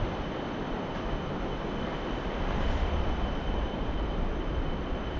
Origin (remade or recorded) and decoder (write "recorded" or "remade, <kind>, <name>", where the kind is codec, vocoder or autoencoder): recorded